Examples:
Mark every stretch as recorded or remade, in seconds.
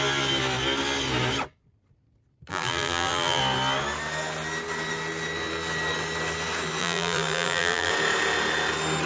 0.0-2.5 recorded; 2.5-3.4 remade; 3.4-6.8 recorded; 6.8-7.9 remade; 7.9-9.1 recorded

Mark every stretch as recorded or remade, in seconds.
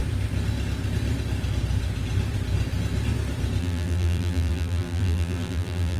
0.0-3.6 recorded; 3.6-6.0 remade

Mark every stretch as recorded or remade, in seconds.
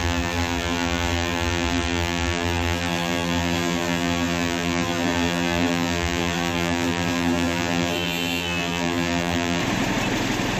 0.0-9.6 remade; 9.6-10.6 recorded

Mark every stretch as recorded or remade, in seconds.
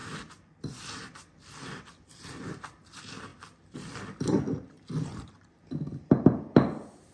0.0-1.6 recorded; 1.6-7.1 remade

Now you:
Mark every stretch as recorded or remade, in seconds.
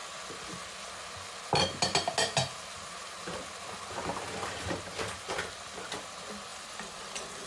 0.0-6.5 recorded; 6.5-7.0 remade; 7.0-7.5 recorded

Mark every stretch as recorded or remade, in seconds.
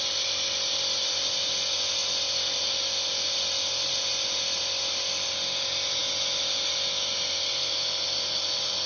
0.0-8.9 recorded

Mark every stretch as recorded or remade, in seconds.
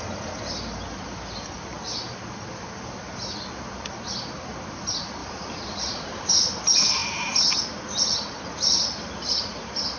0.0-5.2 recorded; 5.2-6.3 remade; 6.3-10.0 recorded